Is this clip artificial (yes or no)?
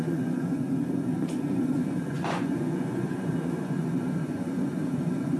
yes